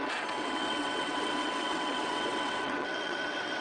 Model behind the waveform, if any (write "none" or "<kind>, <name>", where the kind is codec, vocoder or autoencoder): vocoder, WaveNeXt